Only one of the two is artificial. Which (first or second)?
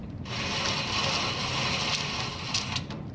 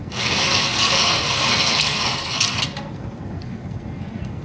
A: second